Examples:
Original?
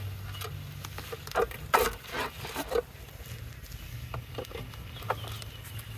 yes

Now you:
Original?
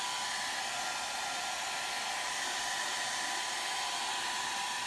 yes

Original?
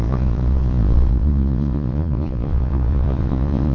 no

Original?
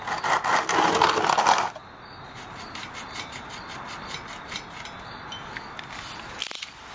yes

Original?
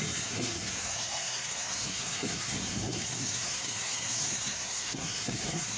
no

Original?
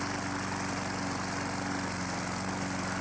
yes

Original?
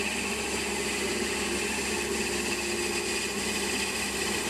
yes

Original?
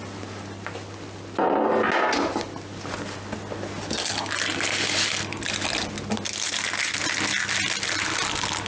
yes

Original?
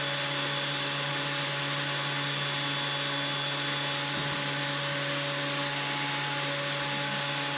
yes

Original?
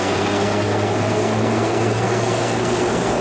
no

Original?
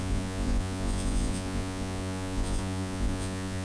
no